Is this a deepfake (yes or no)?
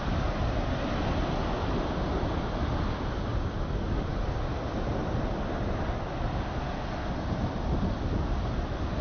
no